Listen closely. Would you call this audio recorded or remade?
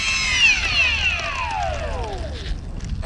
recorded